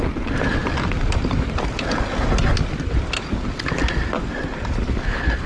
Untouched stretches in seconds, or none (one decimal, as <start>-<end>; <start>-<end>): 0.0-5.5